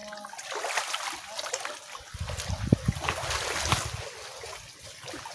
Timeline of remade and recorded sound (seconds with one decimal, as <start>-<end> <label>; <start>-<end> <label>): 0.0-5.3 recorded